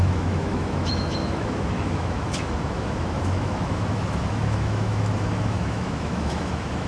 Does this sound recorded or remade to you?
remade